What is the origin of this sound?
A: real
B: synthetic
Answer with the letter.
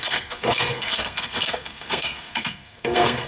B